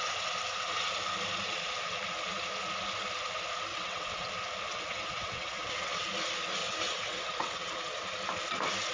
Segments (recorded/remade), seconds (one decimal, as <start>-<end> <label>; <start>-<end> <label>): 0.0-3.7 recorded; 3.7-4.3 remade; 4.3-4.7 recorded; 4.7-6.0 remade; 6.0-6.6 recorded; 6.6-7.7 remade; 7.7-8.9 recorded